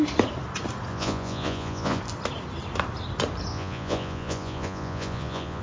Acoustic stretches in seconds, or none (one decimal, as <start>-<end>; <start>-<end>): 0.0-0.9; 2.0-3.5